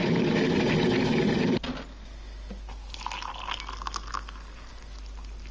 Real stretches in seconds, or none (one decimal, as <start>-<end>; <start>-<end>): 0.0-5.5